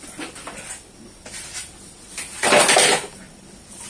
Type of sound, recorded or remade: recorded